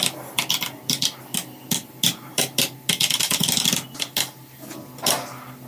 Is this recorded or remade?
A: recorded